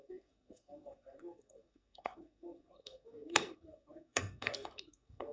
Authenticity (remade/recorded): remade